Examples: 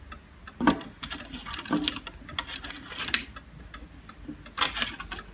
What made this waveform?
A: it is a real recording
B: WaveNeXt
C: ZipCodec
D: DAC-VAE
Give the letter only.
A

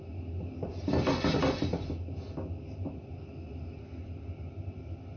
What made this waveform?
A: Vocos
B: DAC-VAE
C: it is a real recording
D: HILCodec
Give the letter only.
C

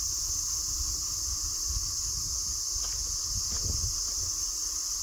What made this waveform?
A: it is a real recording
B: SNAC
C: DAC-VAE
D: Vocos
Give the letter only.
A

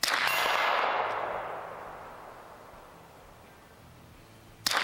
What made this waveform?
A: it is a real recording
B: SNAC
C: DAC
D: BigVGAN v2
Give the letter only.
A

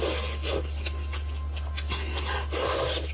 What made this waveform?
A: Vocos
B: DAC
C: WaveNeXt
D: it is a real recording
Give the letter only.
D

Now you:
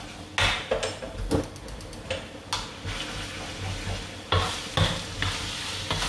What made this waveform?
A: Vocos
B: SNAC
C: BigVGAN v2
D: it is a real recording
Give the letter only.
D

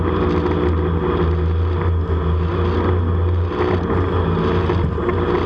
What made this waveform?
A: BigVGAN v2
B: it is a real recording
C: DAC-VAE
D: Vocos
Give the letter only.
B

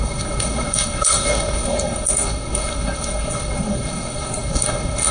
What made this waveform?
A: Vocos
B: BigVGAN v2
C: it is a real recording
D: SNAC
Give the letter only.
D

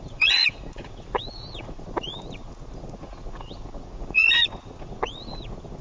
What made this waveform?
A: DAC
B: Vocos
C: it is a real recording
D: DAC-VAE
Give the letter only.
B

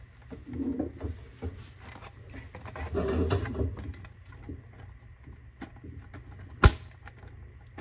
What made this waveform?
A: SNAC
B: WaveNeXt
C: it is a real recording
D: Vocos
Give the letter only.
C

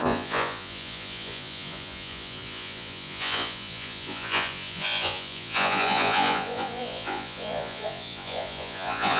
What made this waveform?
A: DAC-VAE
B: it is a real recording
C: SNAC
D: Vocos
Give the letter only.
D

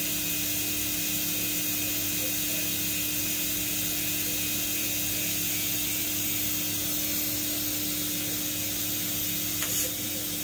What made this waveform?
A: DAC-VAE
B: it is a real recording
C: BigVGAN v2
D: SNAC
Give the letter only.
B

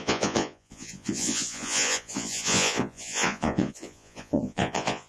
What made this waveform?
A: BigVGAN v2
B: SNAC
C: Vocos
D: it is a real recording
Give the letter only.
C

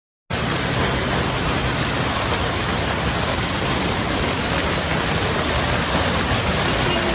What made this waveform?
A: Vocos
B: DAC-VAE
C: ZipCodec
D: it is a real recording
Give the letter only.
D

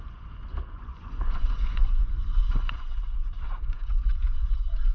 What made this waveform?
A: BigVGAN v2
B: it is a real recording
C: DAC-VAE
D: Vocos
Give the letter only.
D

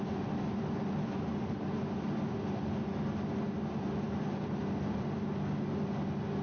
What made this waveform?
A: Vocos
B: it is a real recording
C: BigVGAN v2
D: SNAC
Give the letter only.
B